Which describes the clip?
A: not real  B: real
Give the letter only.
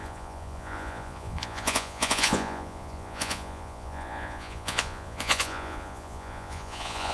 A